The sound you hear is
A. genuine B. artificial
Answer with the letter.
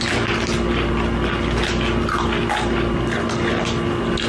A